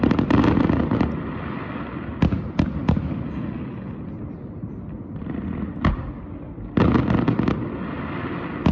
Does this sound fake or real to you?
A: real